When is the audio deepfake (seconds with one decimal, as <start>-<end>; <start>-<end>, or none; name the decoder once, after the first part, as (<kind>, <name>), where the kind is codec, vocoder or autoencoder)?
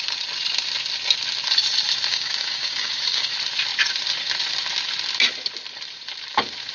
2.1-3.3 (codec, DAC)